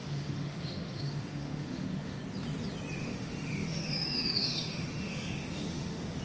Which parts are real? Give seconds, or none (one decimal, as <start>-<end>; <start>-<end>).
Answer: 2.2-3.0